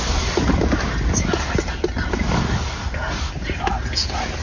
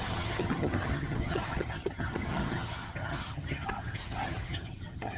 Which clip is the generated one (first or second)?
second